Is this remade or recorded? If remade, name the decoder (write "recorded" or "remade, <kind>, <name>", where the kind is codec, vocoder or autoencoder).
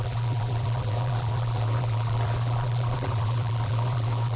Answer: remade, vocoder, BigVGAN v2